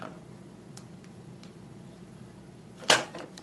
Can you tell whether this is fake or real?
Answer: fake